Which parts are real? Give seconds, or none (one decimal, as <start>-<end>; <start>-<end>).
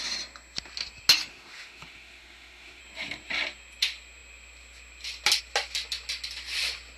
0.0-1.3; 2.8-7.0